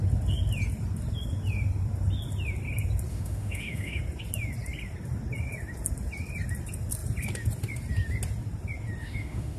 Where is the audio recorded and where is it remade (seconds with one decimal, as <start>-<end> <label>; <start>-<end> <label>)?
0.0-3.1 recorded; 3.1-4.0 remade; 4.0-9.0 recorded; 9.0-9.6 remade